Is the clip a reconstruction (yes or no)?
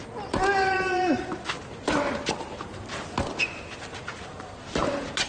no